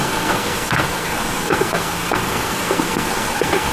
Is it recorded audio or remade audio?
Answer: remade